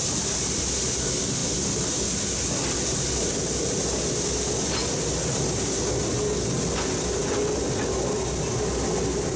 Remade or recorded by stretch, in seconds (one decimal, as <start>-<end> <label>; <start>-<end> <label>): 0.0-9.4 recorded